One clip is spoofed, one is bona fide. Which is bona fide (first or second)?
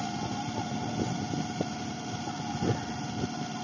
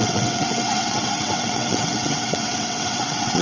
first